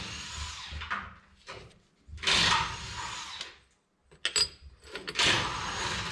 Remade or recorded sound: recorded